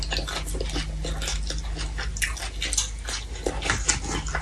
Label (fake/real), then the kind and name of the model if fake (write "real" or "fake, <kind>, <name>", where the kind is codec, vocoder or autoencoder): real